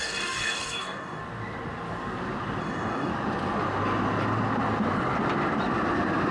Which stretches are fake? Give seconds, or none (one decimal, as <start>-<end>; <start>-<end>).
0.0-1.2; 2.6-3.1